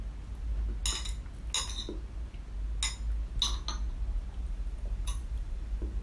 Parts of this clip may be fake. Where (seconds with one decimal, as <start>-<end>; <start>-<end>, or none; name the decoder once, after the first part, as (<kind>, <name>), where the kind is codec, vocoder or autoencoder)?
4.4-6.0 (vocoder, BigVGAN v2)